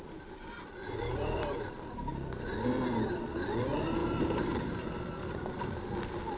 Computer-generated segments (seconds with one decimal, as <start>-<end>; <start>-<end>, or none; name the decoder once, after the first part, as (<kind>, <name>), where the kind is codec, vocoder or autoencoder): 0.8-2.1 (vocoder, BigVGAN v2); 4.0-5.9